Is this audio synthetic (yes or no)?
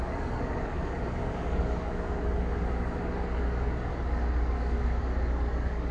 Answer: yes